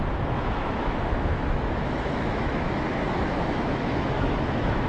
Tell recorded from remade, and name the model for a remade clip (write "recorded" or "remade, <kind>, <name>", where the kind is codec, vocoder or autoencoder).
remade, autoencoder, DAC-VAE